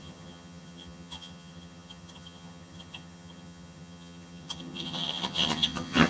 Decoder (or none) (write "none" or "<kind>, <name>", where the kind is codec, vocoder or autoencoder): vocoder, HiFi-GAN